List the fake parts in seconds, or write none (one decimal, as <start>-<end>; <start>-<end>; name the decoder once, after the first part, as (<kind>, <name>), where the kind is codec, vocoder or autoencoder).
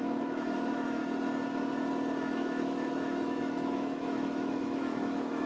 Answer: 0.0-1.0 (autoencoder, DAC-VAE); 2.2-5.5